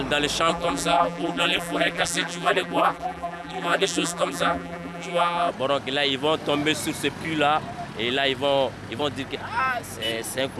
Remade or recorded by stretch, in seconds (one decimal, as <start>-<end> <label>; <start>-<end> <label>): 0.0-0.5 recorded; 0.5-5.5 remade; 5.5-10.6 recorded